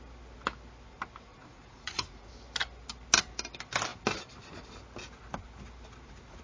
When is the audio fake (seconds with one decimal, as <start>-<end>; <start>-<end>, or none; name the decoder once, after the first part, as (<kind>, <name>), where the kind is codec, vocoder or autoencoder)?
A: 1.3-2.3 (vocoder, Vocos)